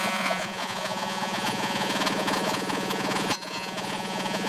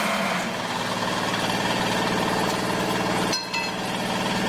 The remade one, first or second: first